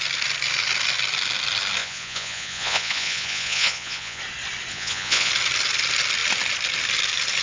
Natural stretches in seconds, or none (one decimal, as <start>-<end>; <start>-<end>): 0.0-1.8; 4.2-4.7; 5.3-7.4